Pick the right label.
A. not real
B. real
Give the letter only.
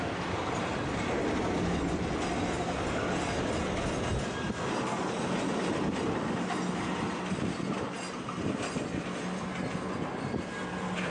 B